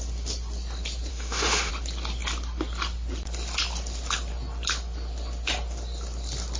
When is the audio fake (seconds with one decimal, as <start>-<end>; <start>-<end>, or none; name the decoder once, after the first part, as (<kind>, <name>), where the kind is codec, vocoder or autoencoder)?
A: 1.1-1.7 (autoencoder, DAC-VAE)